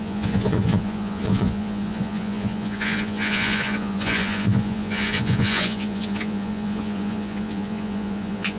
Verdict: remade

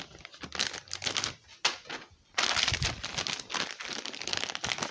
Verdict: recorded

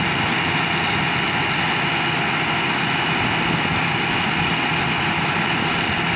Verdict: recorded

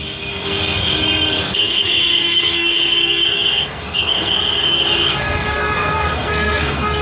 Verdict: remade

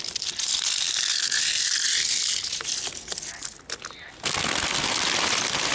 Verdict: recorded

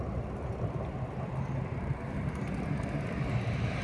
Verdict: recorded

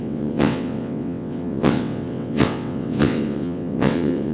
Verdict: remade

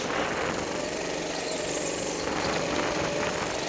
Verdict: recorded